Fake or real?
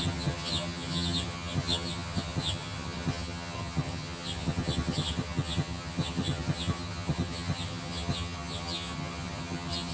fake